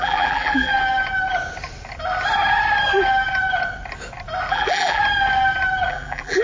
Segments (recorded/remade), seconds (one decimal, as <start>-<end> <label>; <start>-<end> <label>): 0.0-0.7 remade; 0.7-4.5 recorded; 4.5-5.0 remade; 5.0-5.9 recorded; 5.9-6.4 remade